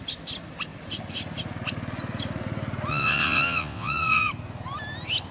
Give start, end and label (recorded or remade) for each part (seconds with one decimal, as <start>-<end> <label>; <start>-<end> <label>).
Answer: 0.0-2.9 recorded; 2.9-4.3 remade; 4.3-5.3 recorded